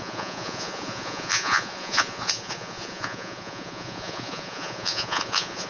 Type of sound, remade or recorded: remade